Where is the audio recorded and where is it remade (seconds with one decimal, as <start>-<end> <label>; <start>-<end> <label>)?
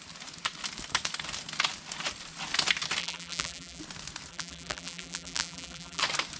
0.0-3.0 recorded; 3.0-3.8 remade; 3.8-4.3 recorded; 4.3-6.0 remade; 6.0-6.4 recorded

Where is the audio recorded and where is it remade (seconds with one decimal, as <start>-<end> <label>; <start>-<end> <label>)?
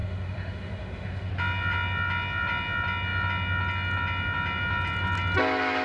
0.0-1.3 remade; 1.3-5.8 recorded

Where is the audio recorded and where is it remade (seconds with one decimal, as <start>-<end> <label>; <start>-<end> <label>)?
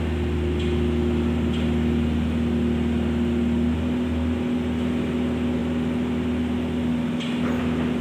0.0-8.0 recorded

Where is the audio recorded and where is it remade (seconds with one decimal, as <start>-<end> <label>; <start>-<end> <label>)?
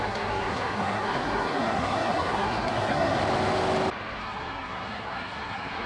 0.0-3.2 remade; 3.2-4.2 recorded; 4.2-5.9 remade